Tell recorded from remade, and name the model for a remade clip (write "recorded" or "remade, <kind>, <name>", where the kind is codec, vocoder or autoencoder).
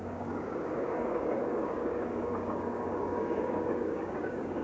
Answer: remade, codec, DAC